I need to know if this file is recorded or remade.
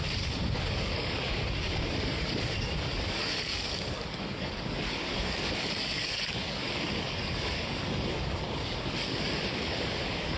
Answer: remade